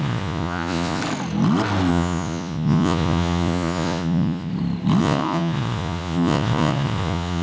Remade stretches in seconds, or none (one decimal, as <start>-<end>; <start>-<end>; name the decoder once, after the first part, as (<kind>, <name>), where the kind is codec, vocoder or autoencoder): 0.0-1.0 (vocoder, Vocos); 1.9-4.5; 5.0-7.4